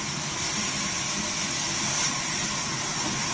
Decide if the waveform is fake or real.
real